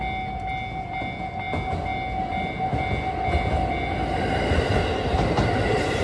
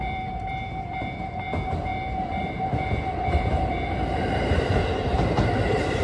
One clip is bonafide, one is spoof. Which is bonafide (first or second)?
first